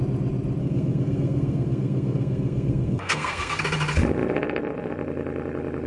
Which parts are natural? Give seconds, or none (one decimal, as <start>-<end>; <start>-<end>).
0.0-0.6; 3.6-5.9